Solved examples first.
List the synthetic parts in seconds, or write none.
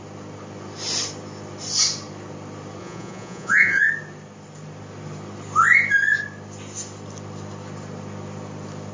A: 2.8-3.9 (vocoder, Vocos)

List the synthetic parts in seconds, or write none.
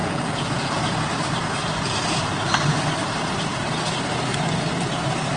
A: 0.0-0.8 (vocoder, Vocos)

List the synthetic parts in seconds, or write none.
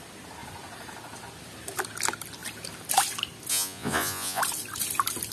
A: 3.5-4.4 (vocoder, Vocos)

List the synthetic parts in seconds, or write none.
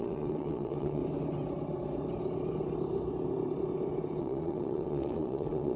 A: 0.0-1.0 (vocoder, Vocos); 4.2-5.8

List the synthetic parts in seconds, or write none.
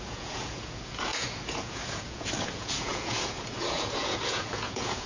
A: 0.0-5.1 (vocoder, Vocos)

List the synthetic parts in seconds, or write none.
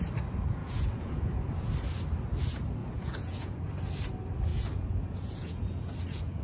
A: 0.6-1.7 (vocoder, Vocos); 2.8-3.7; 4.5-6.4